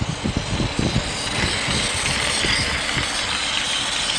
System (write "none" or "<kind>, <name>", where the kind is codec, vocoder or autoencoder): none